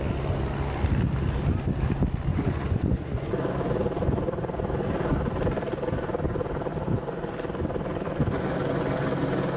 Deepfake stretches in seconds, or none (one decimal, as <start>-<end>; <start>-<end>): 2.3-3.3